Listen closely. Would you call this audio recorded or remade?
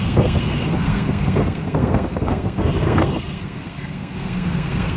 remade